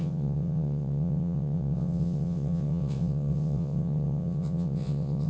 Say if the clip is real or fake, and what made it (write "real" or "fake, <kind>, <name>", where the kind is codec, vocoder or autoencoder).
fake, vocoder, WaveNeXt